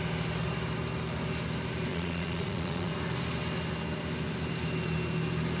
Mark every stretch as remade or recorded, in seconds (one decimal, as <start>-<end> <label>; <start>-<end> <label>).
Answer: 0.0-1.9 recorded; 1.9-2.9 remade; 2.9-5.6 recorded